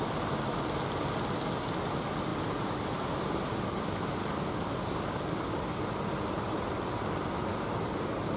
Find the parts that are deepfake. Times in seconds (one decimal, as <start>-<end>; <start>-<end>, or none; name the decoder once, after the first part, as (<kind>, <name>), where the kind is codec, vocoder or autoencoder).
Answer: 4.2-5.8 (codec, DAC)